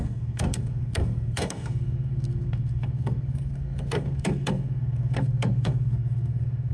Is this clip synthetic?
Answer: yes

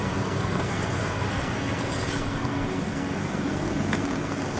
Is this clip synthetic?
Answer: yes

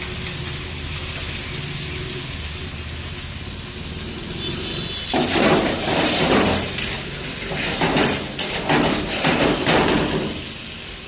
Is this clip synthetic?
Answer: no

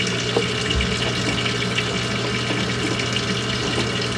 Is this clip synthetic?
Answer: no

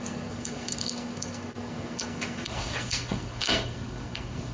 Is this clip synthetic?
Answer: yes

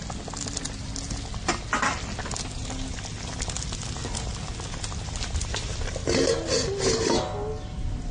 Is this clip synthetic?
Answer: no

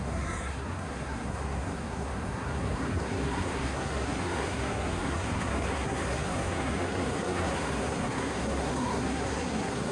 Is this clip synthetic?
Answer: yes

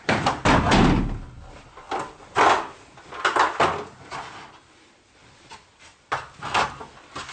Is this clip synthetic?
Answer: no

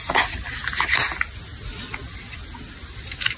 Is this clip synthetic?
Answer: no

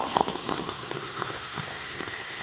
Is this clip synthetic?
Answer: yes